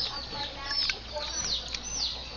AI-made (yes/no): no